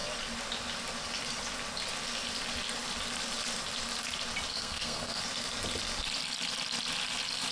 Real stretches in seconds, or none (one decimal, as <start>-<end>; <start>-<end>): 0.0-4.5; 5.2-7.5